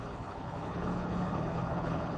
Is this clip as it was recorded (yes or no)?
no